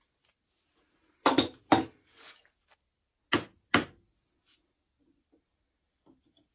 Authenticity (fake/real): real